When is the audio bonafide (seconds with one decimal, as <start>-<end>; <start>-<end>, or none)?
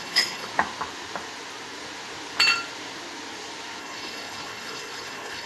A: 0.5-3.8